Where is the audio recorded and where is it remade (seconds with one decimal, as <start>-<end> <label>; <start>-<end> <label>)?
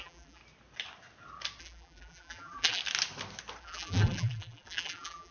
0.0-0.4 remade; 0.4-1.6 recorded; 1.6-2.8 remade; 2.8-3.6 recorded; 3.6-5.3 remade